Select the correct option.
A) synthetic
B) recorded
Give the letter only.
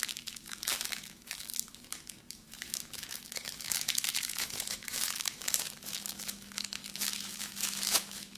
A